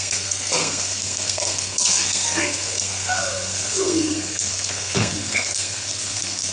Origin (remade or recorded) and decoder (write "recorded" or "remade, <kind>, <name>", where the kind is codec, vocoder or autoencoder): remade, codec, SNAC